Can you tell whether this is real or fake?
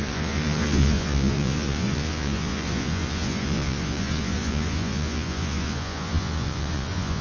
fake